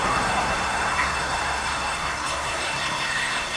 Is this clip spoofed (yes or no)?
yes